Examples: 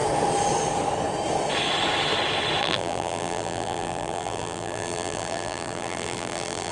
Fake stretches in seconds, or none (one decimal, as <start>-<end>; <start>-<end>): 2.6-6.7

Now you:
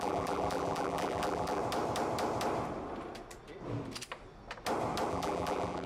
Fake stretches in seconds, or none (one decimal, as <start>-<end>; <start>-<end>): 0.0-1.6; 5.1-5.9

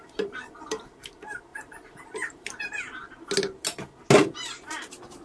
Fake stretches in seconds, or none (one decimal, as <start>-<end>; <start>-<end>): 0.0-3.0; 4.7-5.2

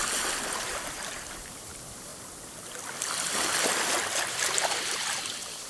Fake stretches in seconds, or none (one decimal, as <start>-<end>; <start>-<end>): 0.6-2.1; 4.3-5.7